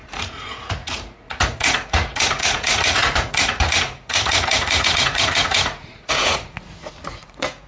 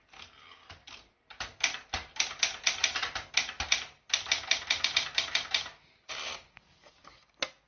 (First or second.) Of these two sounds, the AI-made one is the first